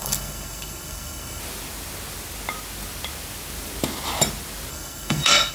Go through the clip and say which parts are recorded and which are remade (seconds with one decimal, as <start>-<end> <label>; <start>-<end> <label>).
0.0-1.4 remade; 1.4-4.7 recorded; 4.7-5.5 remade